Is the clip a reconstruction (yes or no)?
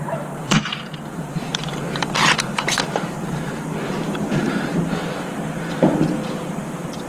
yes